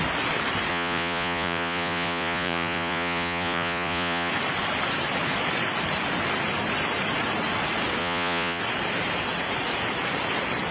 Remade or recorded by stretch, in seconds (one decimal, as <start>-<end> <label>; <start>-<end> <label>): 0.0-0.7 recorded; 0.7-4.3 remade; 4.3-8.0 recorded; 8.0-8.6 remade; 8.6-10.7 recorded